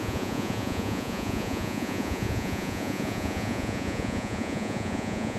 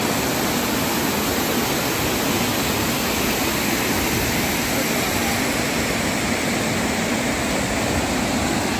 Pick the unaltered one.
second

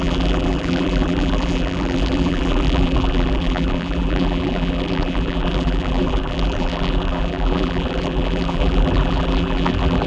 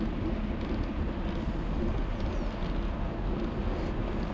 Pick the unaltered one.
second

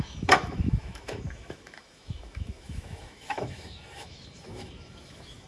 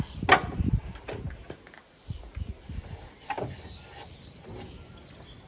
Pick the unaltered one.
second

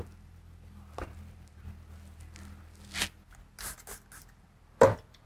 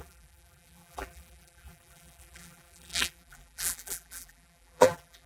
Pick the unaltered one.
first